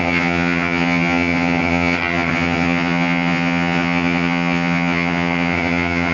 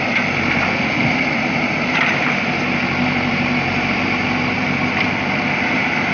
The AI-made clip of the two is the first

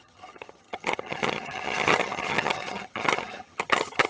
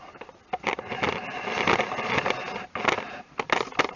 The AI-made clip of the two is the first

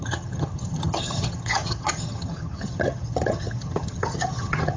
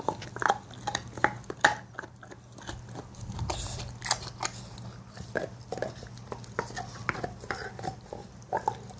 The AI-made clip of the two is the first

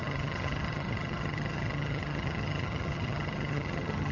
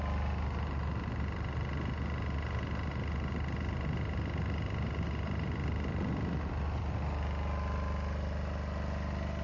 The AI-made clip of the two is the first